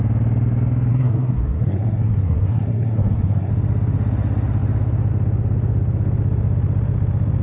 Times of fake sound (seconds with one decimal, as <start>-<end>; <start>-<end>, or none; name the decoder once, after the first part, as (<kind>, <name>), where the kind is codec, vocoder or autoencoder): 0.9-3.5 (codec, SNAC)